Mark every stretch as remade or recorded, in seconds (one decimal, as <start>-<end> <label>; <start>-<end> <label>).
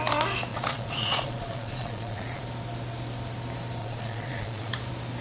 0.0-0.5 recorded; 0.5-2.4 remade; 2.4-3.8 recorded; 3.8-4.7 remade; 4.7-5.2 recorded